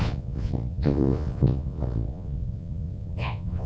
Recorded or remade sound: remade